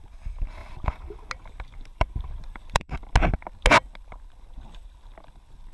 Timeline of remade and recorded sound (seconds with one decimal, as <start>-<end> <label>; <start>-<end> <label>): 0.0-0.6 recorded; 0.6-1.3 remade; 1.3-1.9 recorded; 1.9-3.0 remade; 3.0-5.7 recorded

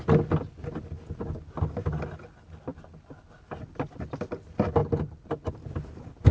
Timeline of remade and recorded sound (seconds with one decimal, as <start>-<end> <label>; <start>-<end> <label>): 0.0-2.7 recorded; 2.7-4.3 remade; 4.3-4.8 recorded; 4.8-5.5 remade; 5.5-6.3 recorded

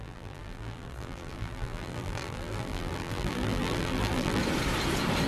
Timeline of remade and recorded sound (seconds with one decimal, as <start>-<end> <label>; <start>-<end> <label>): 0.0-4.4 remade; 4.4-5.3 recorded

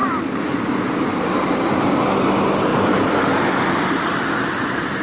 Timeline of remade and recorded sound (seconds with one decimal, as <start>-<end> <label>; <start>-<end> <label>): 0.0-1.1 recorded; 1.1-1.7 remade; 1.7-2.7 recorded; 2.7-3.2 remade; 3.2-5.0 recorded